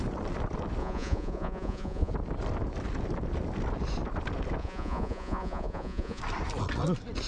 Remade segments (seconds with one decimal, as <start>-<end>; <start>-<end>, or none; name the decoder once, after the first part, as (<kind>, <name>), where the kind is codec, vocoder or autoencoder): 0.8-2.1 (vocoder, Vocos); 4.6-6.2

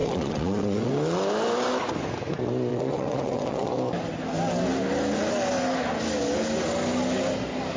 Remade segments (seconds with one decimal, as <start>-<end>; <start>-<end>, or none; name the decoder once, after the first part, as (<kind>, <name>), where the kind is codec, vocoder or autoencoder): 0.0-0.9 (vocoder, WaveNeXt); 2.7-3.7

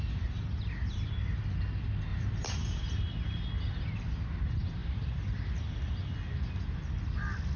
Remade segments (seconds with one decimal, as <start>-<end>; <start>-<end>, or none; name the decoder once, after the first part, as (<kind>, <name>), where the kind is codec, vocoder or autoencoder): 2.1-3.0 (vocoder, BigVGAN v2)

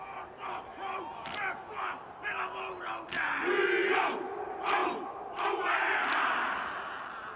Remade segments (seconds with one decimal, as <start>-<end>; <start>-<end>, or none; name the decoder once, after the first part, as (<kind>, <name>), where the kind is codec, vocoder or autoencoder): none